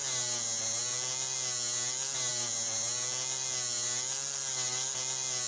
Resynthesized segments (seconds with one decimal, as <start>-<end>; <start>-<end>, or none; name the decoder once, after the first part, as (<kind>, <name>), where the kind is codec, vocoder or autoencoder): none